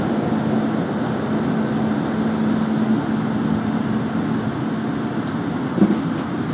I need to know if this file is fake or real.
real